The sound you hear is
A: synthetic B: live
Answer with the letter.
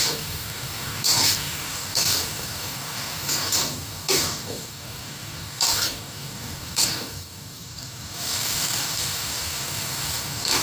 A